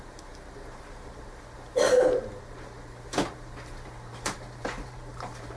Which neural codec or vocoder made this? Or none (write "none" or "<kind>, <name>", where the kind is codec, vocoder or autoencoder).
vocoder, BigVGAN v2